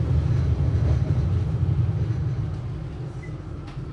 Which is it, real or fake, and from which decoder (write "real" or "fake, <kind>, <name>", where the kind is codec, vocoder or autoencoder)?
real